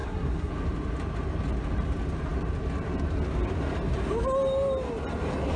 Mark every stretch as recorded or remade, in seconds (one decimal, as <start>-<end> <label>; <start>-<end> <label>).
0.0-0.5 remade; 0.5-5.6 recorded